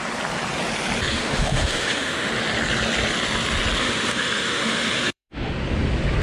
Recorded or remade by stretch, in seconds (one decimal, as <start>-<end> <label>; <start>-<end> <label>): 0.0-1.1 recorded; 1.1-2.3 remade; 2.3-3.8 recorded; 3.8-5.5 remade; 5.5-6.2 recorded